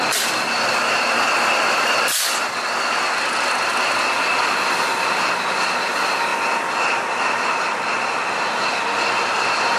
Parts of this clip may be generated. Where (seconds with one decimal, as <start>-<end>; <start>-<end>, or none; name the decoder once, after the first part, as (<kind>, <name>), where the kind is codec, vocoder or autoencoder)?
6.3-8.2 (vocoder, BigVGAN v2)